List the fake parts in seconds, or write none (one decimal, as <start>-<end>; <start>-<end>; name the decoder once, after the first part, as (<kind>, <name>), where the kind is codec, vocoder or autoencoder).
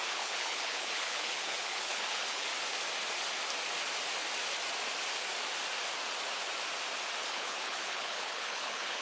0.0-2.5 (codec, HILCodec); 7.2-9.0